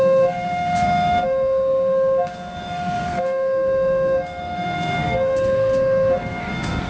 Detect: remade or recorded remade